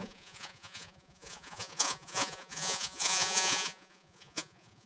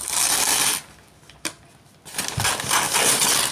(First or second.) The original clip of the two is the second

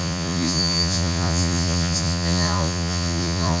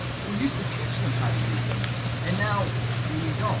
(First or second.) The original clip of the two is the second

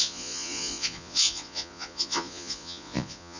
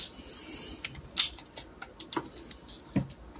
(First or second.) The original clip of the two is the second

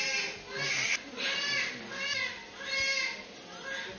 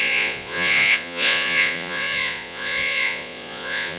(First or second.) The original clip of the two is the first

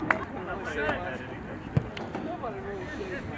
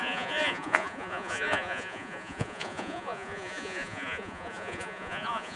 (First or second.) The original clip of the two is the first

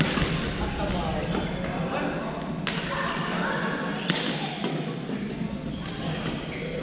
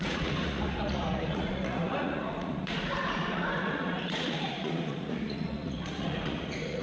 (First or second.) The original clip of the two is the first